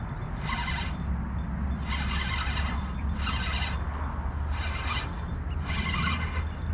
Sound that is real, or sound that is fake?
real